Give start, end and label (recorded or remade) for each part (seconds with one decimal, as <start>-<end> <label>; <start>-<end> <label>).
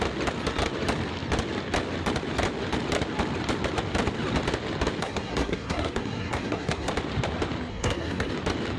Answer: 0.0-5.0 recorded; 5.0-6.9 remade; 6.9-7.7 recorded; 7.7-8.3 remade; 8.3-8.8 recorded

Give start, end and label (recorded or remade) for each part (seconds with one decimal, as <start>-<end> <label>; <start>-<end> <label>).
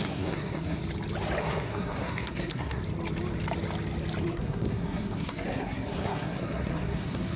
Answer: 0.0-0.8 remade; 0.8-1.4 recorded; 1.4-2.8 remade; 2.8-4.3 recorded; 4.3-7.4 remade